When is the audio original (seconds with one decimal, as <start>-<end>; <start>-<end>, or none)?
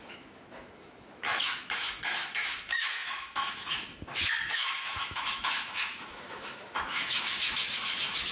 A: none